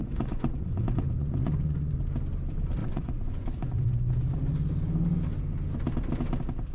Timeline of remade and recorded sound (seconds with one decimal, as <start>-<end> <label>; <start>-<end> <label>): 0.0-2.0 remade; 2.0-2.8 recorded; 2.8-4.1 remade; 4.1-6.7 recorded